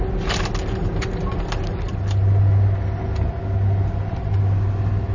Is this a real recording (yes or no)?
yes